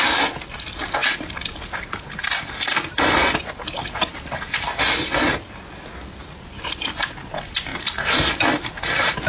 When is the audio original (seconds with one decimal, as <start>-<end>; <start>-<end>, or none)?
0.0-9.3